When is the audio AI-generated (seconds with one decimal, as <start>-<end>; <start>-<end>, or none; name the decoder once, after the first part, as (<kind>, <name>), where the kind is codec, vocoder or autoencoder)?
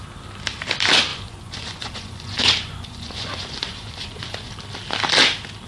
1.1-4.5 (vocoder, Vocos)